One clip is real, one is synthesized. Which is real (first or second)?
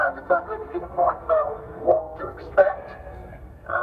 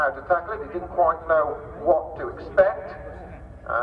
second